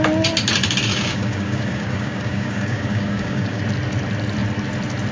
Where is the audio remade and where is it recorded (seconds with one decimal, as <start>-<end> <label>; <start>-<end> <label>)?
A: 0.0-0.9 recorded; 0.9-3.6 remade; 3.6-5.1 recorded